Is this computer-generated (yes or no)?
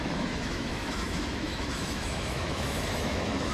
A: yes